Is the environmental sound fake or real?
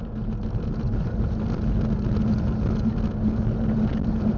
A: real